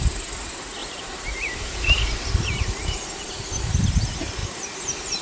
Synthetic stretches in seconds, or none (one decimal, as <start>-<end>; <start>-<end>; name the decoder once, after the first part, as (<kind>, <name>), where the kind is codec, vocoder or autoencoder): 0.8-3.3 (vocoder, BigVGAN v2); 4.4-5.2